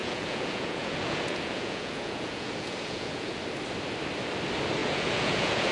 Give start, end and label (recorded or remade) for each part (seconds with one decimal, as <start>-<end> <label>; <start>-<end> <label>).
0.0-3.4 remade; 3.4-4.8 recorded; 4.8-5.7 remade